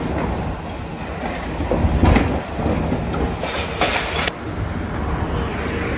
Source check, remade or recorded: recorded